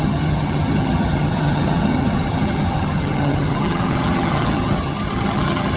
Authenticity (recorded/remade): remade